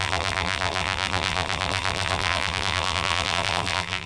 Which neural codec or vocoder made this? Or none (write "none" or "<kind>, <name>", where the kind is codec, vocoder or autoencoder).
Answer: vocoder, BigVGAN v2